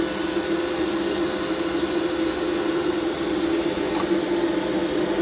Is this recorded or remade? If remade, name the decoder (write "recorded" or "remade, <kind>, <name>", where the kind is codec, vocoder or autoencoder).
recorded